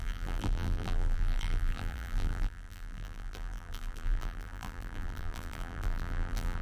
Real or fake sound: fake